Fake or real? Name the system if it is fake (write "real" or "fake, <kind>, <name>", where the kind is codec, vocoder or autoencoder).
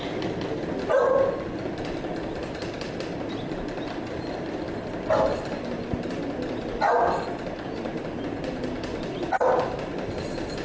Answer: real